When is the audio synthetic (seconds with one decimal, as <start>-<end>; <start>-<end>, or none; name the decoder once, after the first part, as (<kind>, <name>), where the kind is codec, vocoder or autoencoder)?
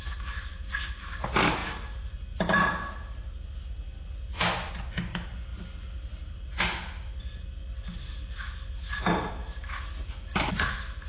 none